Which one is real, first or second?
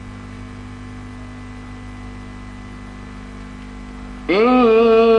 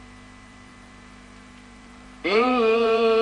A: first